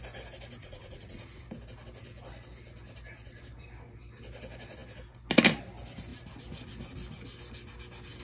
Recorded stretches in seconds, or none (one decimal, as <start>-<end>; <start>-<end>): 0.0-0.6; 1.4-8.2